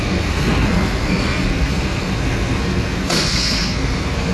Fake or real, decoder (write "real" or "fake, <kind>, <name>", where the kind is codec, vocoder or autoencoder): fake, codec, SNAC